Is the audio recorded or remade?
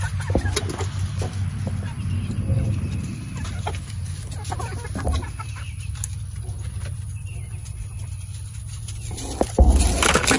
recorded